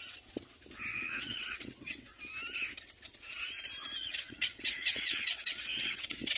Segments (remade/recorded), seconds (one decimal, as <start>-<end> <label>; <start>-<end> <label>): 0.0-0.9 recorded; 0.9-2.2 remade; 2.2-4.0 recorded; 4.0-6.4 remade